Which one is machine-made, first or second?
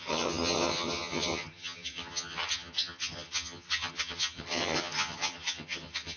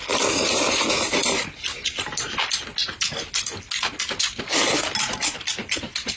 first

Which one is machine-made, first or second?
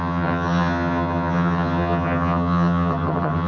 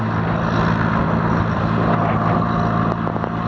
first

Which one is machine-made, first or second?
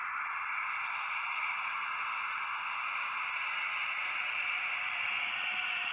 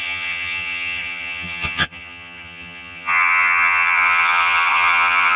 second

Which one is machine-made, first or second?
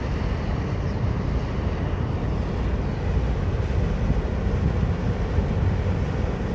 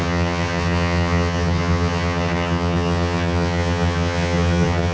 second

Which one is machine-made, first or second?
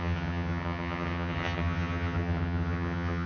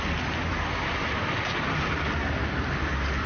first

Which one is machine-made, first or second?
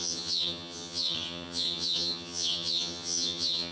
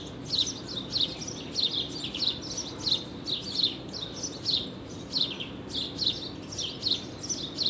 first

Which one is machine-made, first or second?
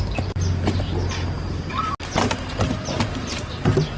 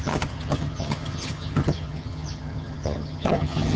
second